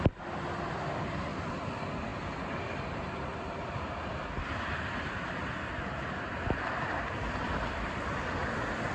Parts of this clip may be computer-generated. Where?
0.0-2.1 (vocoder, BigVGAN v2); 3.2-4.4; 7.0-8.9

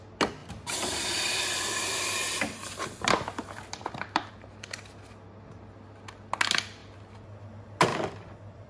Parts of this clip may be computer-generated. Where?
0.4-4.3 (vocoder, BigVGAN v2); 7.9-8.7

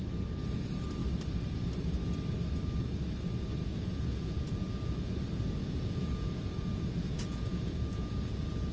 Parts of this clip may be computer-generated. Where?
3.7-5.1 (vocoder, Vocos); 5.6-8.7

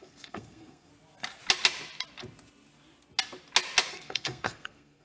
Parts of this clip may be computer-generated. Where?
0.0-0.9 (codec, SNAC); 3.9-5.0

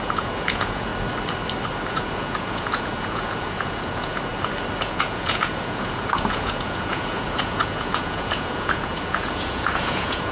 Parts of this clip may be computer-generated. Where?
0.0-0.9 (vocoder, Vocos); 1.9-4.3; 4.8-10.3

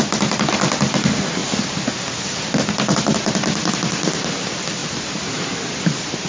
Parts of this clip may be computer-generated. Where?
none

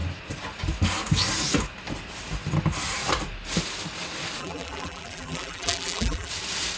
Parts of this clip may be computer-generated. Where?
4.4-6.3 (vocoder, BigVGAN v2)

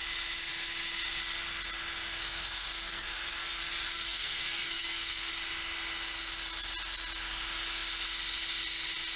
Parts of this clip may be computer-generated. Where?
2.2-5.3 (codec, SNAC)